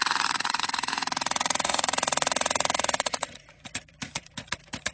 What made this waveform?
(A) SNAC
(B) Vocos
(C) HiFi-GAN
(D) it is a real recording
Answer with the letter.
B